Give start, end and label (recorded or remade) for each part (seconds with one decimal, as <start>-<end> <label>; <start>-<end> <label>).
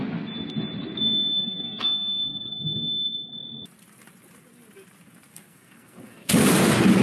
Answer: 0.0-1.3 recorded; 1.3-2.9 remade; 2.9-5.3 recorded; 5.3-6.3 remade; 6.3-7.0 recorded